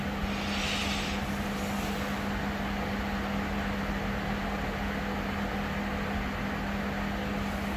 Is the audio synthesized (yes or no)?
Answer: no